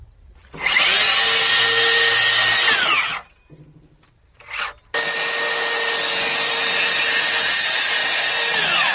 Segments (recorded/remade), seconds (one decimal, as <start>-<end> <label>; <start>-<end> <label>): 0.0-8.9 recorded